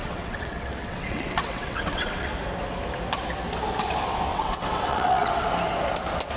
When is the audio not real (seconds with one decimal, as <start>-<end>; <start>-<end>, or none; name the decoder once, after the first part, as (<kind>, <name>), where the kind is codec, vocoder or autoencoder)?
0.0-2.3 (vocoder, WaveNeXt); 4.3-5.3